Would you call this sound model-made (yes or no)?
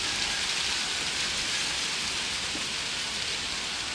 no